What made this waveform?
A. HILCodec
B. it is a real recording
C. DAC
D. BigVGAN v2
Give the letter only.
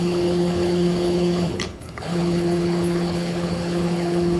A